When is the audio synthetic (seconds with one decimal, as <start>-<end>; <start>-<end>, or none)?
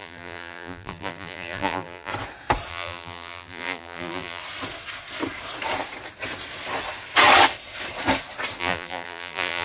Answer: 0.0-2.1; 2.7-4.4; 8.6-9.6